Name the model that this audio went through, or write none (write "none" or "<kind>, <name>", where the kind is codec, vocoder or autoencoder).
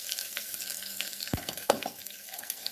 codec, SNAC